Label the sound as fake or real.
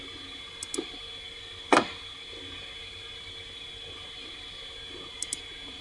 real